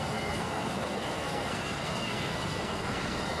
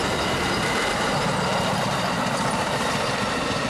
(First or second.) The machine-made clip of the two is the first